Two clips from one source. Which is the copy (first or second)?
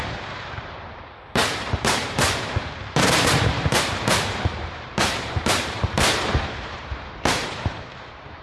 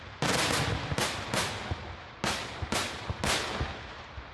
first